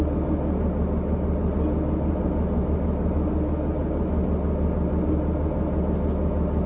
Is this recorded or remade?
recorded